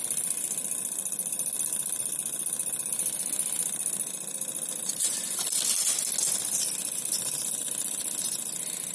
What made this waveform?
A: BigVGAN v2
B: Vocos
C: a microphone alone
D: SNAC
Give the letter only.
C